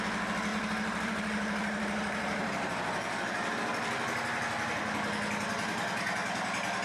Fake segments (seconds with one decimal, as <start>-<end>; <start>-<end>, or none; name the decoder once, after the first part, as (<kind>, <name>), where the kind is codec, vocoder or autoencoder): 0.5-3.5 (vocoder, BigVGAN v2)

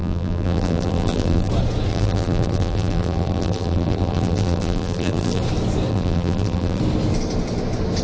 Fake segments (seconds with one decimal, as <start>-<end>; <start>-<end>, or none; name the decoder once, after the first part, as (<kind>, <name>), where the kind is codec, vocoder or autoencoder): 0.0-1.5 (vocoder, BigVGAN v2); 1.9-5.4; 5.9-6.8